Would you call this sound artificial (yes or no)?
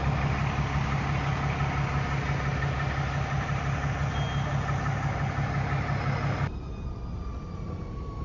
no